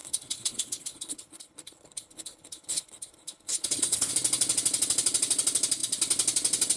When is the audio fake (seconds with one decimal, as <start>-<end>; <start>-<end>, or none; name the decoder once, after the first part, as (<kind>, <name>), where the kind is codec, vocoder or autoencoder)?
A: 0.0-4.1 (codec, HILCodec)